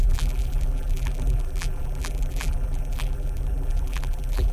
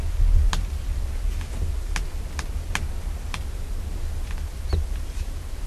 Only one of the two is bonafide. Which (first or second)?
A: second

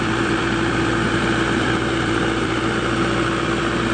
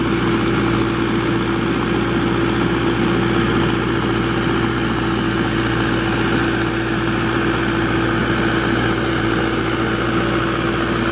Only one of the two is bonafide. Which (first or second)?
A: second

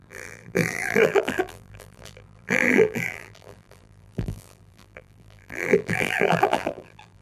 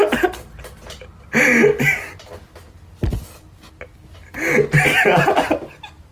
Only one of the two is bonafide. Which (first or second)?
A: second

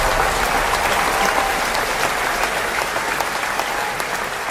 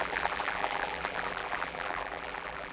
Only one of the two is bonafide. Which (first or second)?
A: first